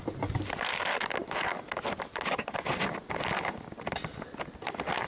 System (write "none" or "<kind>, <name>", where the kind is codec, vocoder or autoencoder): none